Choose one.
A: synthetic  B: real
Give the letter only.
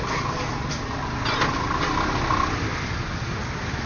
B